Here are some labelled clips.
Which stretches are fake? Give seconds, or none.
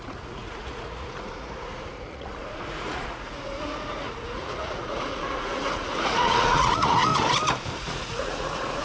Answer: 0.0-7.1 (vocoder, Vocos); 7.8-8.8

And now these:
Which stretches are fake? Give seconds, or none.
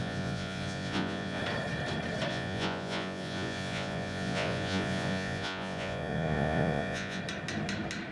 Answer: 0.0-1.4 (vocoder, Vocos); 2.3-7.2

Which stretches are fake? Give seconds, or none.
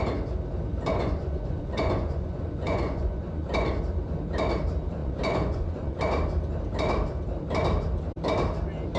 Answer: 0.9-3.8 (vocoder, Vocos); 5.0-6.0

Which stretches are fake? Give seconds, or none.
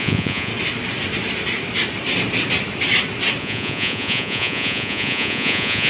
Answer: 0.0-0.5 (vocoder, Vocos); 3.4-5.9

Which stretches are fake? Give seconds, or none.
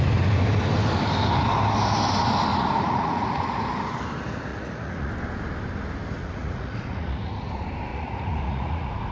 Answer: 2.5-3.7 (vocoder, Vocos); 4.5-5.1; 6.2-7.5; 7.9-9.1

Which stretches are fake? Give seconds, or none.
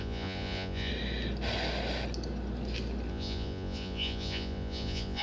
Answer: 0.0-0.9 (vocoder, Vocos); 3.1-5.2